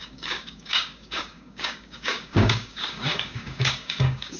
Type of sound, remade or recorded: remade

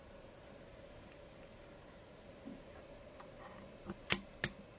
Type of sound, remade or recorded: recorded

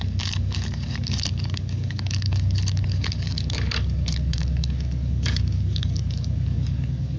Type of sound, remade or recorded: remade